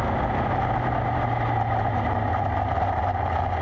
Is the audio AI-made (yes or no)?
no